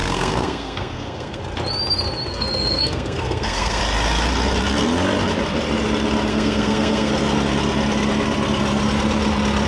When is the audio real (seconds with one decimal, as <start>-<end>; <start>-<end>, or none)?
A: 1.4-2.3; 3.8-6.3; 7.1-9.7